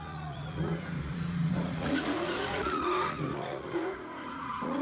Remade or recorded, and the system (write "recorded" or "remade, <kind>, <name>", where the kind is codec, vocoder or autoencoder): remade, vocoder, Vocos